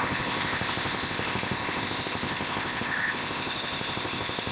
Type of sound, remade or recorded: remade